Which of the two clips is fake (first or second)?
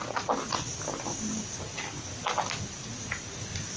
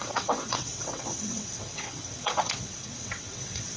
second